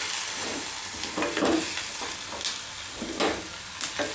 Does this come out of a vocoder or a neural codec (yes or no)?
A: no